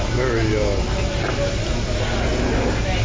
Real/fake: real